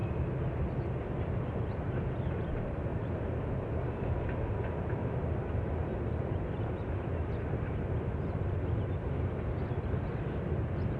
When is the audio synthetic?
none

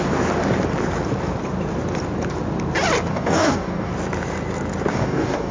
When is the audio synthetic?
3.1-3.9 (codec, DAC); 4.9-5.5